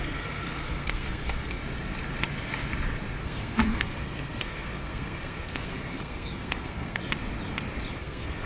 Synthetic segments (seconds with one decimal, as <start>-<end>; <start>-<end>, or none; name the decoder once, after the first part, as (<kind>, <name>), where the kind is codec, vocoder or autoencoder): 0.0-1.6 (codec, SNAC); 3.2-7.0; 8.0-8.5